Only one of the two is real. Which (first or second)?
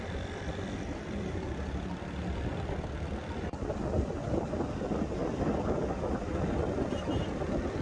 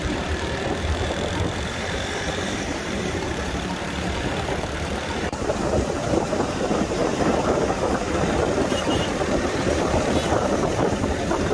first